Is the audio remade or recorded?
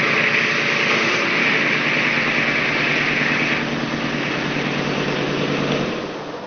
recorded